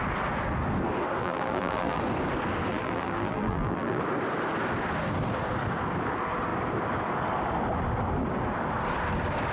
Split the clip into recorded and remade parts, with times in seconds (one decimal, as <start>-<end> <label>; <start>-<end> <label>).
0.0-1.2 recorded; 1.2-2.0 remade; 2.0-2.7 recorded; 2.7-4.0 remade; 4.0-9.5 recorded